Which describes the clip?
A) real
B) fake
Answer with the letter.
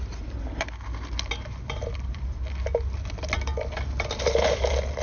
A